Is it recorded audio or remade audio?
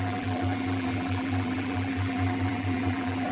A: remade